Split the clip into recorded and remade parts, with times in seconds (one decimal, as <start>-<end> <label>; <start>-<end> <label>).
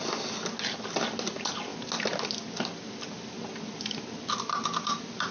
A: 0.0-5.3 recorded